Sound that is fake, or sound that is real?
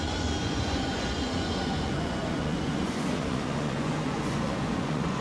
fake